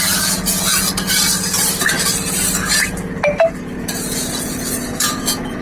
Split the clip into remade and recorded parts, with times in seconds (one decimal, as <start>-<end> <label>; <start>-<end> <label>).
0.0-0.9 remade; 0.9-3.8 recorded; 3.8-5.6 remade